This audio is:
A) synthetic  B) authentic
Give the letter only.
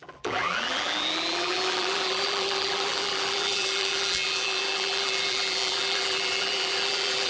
A